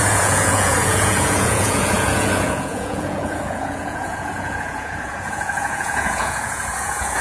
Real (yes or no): no